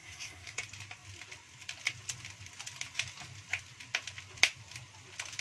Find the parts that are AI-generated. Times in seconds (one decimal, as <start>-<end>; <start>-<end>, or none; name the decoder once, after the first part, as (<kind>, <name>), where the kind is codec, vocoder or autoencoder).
0.0-0.6 (codec, SNAC)